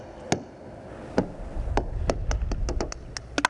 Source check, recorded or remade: recorded